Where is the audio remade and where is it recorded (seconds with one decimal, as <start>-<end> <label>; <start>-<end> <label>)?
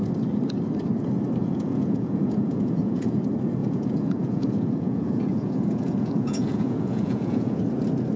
0.0-1.4 recorded; 1.4-3.2 remade; 3.2-3.6 recorded; 3.6-7.6 remade; 7.6-8.2 recorded